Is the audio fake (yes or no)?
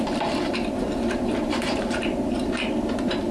no